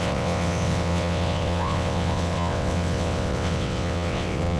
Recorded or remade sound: remade